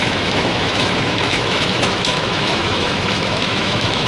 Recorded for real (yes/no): no